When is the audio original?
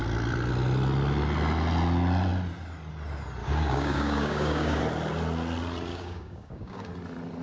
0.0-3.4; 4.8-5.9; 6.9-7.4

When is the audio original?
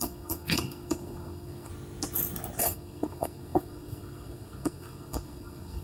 1.7-2.6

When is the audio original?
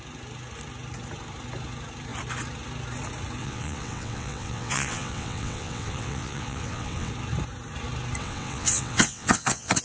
0.0-3.4; 7.1-8.2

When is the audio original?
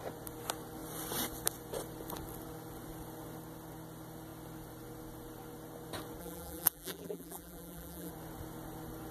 0.0-6.2; 8.1-9.1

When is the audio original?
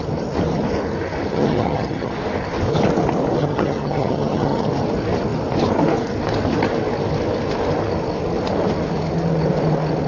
0.0-1.3; 2.1-3.4; 4.7-10.1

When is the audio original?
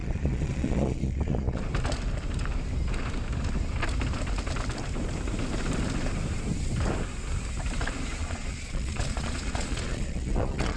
1.6-8.2